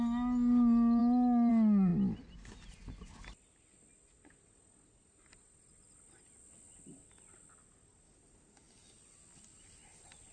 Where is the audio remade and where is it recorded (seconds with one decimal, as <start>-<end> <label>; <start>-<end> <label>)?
0.0-10.3 recorded